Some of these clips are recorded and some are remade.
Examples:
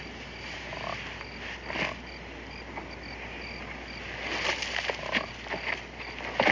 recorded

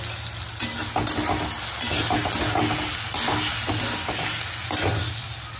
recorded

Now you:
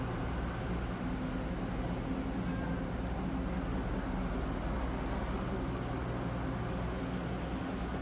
recorded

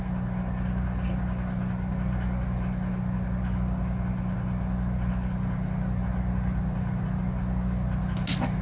recorded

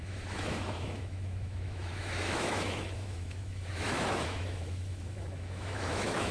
remade